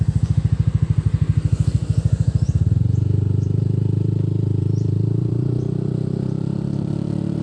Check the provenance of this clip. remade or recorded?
remade